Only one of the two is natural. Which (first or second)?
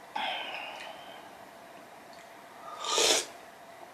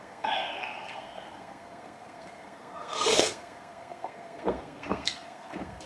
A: first